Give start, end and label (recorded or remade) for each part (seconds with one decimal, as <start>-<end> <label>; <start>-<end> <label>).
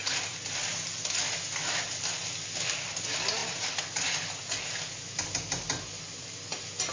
0.0-6.9 recorded